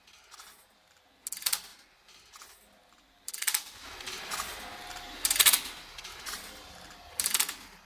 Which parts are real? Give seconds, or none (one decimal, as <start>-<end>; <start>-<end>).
0.0-7.8